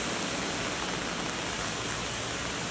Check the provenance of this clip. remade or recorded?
recorded